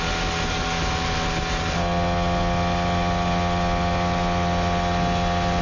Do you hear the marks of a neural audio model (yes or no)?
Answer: no